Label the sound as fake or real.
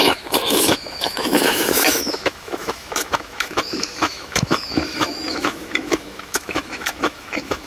fake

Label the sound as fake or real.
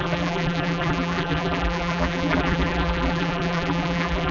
fake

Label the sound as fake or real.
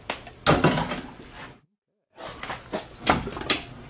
real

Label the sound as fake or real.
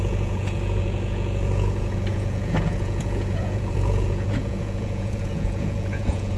fake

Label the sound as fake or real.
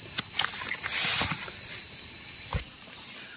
real